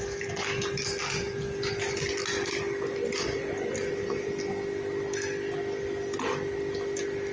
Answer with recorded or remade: recorded